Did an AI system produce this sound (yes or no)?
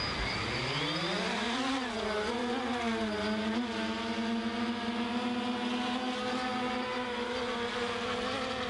no